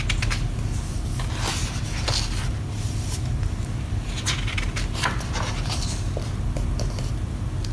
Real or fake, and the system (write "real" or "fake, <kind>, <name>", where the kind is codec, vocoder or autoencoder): real